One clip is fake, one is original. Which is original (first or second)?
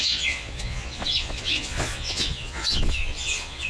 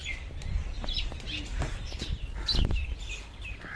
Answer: second